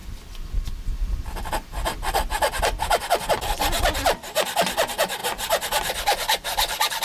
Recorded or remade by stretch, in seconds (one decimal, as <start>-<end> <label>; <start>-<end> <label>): 0.0-7.0 recorded